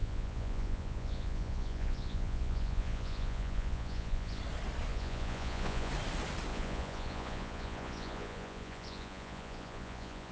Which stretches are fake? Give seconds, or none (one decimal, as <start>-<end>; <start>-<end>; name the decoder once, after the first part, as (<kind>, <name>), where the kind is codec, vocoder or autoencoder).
0.0-4.4 (vocoder, Vocos); 4.9-5.9; 6.5-10.3